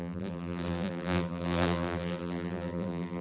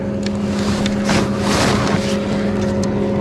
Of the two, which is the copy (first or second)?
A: first